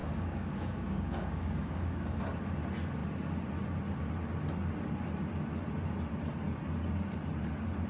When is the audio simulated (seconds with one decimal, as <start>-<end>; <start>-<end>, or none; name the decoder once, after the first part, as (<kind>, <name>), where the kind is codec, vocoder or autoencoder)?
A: 0.0-2.2 (codec, DAC)